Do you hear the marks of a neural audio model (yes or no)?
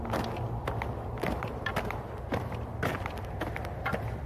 yes